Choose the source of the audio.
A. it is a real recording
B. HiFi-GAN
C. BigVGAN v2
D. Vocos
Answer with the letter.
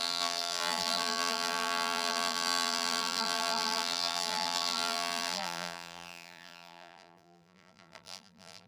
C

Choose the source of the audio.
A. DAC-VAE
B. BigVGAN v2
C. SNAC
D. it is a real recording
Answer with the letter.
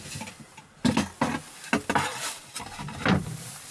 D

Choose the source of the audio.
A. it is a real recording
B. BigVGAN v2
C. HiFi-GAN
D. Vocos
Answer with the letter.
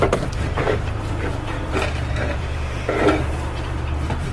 B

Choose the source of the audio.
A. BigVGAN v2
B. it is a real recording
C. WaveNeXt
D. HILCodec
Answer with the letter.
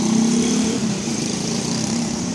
A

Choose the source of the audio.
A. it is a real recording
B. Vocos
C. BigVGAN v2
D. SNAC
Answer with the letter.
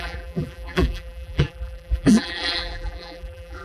C